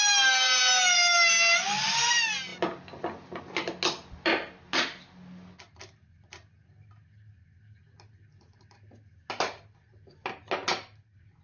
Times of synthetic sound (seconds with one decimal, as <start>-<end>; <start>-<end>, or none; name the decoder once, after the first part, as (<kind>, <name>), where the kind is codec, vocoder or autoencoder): none